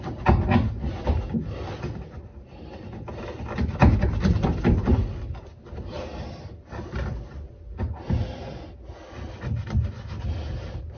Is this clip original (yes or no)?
yes